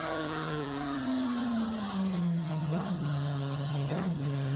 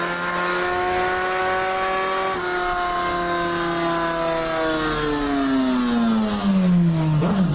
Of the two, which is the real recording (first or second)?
second